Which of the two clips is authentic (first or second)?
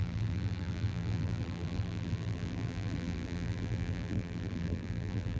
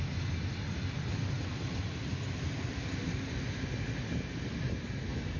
second